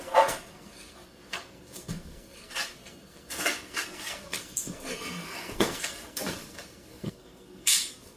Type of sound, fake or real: fake